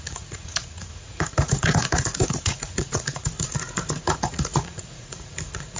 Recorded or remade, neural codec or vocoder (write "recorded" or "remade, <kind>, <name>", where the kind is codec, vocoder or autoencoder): remade, vocoder, Vocos